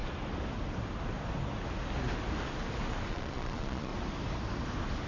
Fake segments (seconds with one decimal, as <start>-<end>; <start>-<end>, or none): 3.1-3.9